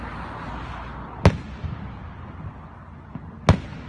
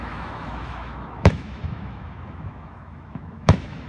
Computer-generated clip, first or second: second